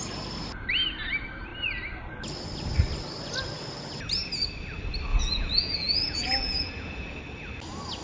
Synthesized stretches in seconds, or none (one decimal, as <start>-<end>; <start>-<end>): 5.1-7.2